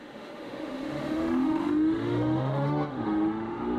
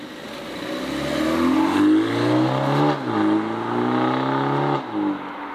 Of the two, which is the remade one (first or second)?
first